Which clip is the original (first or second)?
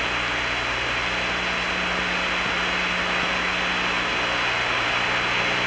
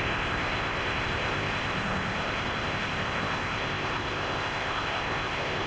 first